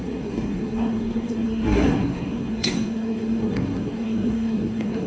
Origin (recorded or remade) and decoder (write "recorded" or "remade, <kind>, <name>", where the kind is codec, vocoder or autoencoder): remade, codec, SNAC